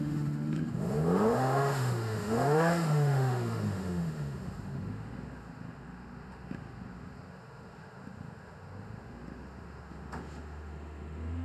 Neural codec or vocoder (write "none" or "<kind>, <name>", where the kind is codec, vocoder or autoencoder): autoencoder, DAC-VAE